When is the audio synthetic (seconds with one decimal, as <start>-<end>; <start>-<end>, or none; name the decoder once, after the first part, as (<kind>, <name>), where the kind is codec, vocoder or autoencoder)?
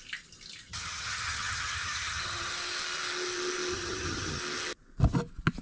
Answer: 0.7-2.5 (vocoder, HiFi-GAN); 3.7-4.4